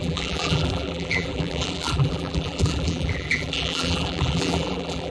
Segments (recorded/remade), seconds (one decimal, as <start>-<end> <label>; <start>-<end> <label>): 0.0-5.1 remade